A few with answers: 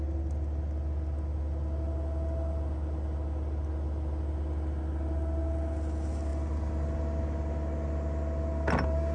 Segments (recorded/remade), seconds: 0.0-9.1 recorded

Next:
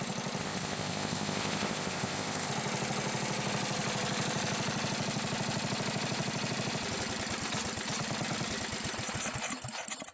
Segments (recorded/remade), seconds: 0.0-0.4 recorded; 0.4-2.5 remade; 2.5-10.1 recorded

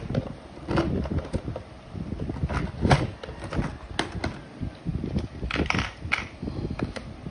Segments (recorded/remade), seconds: 0.0-7.3 recorded

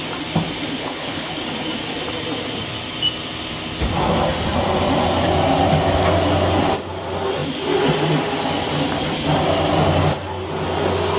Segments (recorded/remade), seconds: 0.0-0.8 recorded; 0.8-1.3 remade; 1.3-11.2 recorded

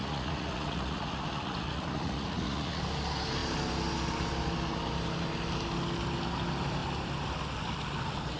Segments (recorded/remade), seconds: 0.0-2.8 remade; 2.8-8.4 recorded

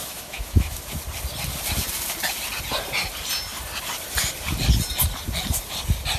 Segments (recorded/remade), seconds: 0.0-0.9 remade; 0.9-6.2 recorded

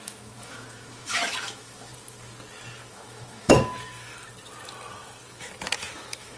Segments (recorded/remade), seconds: 0.0-1.9 remade; 1.9-2.7 recorded; 2.7-4.1 remade; 4.1-5.3 recorded; 5.3-6.4 remade

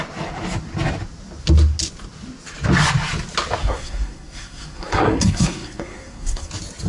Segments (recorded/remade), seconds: 0.0-3.6 recorded; 3.6-6.5 remade; 6.5-6.9 recorded